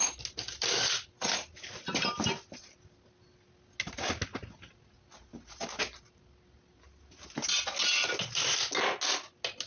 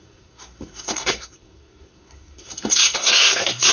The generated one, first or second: second